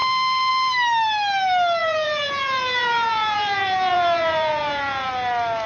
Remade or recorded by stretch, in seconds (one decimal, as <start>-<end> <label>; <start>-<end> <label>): 0.0-1.8 recorded; 1.8-5.1 remade; 5.1-5.7 recorded